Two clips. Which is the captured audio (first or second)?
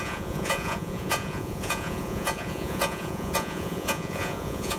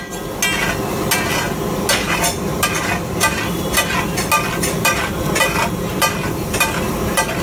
second